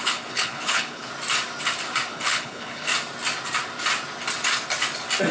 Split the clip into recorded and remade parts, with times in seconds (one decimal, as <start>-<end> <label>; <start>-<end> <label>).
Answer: 0.0-1.1 remade; 1.1-2.1 recorded; 2.1-2.9 remade; 2.9-5.3 recorded